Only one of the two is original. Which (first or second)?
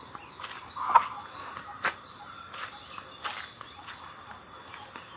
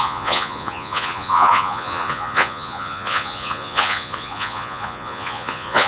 first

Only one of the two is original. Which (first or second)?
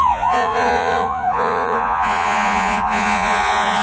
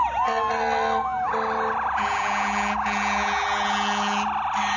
second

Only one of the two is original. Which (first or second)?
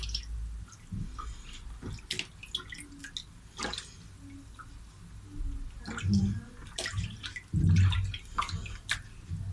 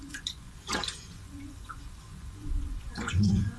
first